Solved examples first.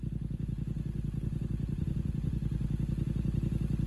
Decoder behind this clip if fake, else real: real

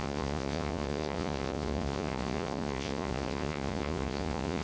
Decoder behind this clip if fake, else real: fake, vocoder, Vocos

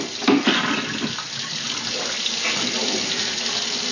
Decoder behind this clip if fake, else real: real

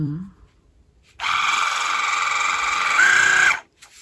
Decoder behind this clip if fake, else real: fake, vocoder, BigVGAN v2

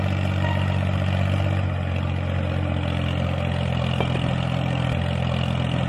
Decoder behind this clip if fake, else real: real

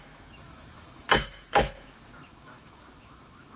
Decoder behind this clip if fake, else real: fake, autoencoder, DAC-VAE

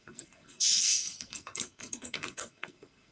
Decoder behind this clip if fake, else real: fake, codec, SNAC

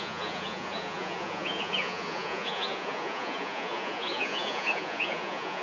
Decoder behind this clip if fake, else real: fake, vocoder, Vocos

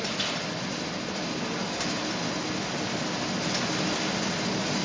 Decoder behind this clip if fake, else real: real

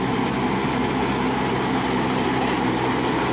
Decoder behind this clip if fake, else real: real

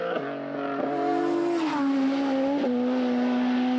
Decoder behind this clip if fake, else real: real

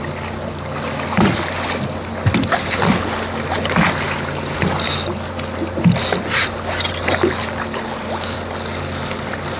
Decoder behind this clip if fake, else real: real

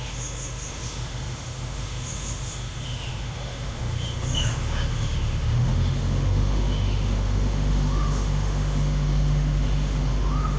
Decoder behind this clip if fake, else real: fake, autoencoder, DAC-VAE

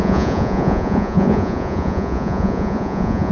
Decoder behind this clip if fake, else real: fake, vocoder, Vocos